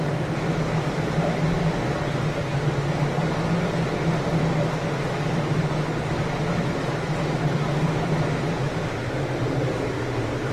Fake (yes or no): no